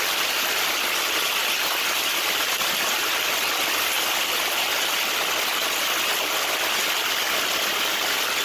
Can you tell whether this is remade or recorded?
recorded